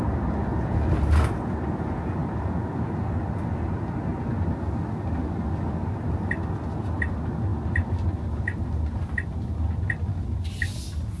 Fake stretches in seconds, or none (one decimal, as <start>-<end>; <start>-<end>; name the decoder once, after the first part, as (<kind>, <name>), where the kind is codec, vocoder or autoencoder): none